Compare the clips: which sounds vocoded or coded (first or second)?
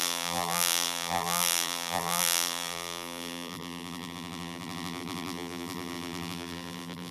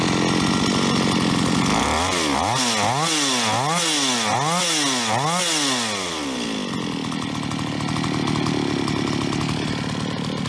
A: first